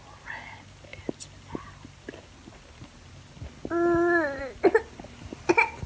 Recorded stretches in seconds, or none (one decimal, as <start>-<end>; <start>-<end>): 0.0-5.9